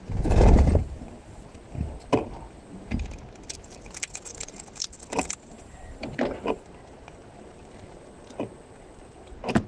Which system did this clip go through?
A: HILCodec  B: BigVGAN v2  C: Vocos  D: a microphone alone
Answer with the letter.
D